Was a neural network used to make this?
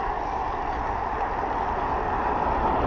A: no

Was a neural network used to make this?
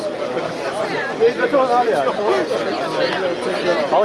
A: no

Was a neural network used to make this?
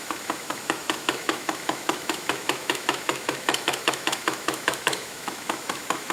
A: yes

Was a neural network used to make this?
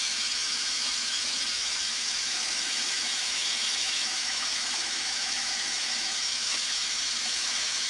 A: yes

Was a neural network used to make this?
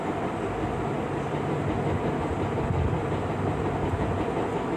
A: no